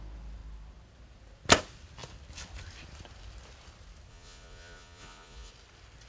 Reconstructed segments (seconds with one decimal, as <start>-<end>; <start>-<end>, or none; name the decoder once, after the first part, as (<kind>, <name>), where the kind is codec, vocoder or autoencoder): 4.1-5.5 (vocoder, Vocos)